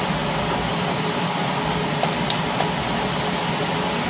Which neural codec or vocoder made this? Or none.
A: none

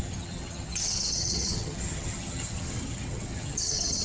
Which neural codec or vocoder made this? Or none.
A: vocoder, HiFi-GAN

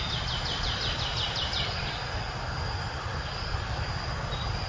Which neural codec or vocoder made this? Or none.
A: none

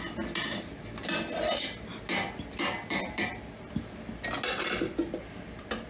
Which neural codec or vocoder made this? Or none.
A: none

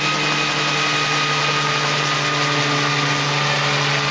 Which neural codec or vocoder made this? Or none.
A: none